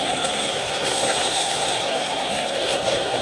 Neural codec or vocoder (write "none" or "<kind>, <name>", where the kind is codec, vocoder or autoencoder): codec, SNAC